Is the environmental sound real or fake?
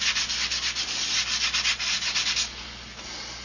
real